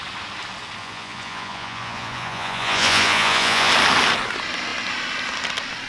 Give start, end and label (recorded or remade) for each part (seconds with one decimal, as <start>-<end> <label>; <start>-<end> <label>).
0.0-0.8 recorded; 0.8-3.7 remade; 3.7-5.9 recorded